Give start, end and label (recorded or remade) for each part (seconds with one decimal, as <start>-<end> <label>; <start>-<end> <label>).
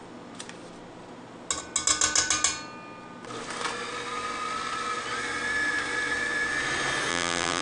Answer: 0.0-7.1 recorded; 7.1-7.6 remade